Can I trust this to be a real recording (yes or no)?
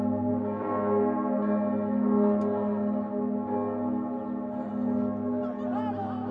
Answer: yes